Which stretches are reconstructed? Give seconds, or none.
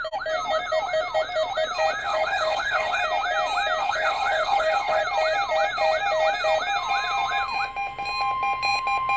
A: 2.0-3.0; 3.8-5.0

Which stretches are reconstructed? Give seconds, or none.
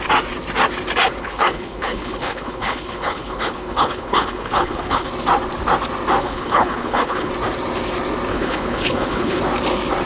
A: 1.2-5.1; 6.2-7.3; 8.3-9.4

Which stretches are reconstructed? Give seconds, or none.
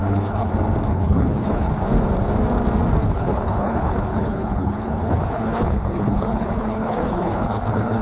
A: 0.0-0.5; 0.9-1.7; 3.0-8.0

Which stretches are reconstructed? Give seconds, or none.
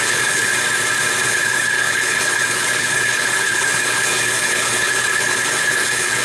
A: 0.0-0.5; 1.2-6.2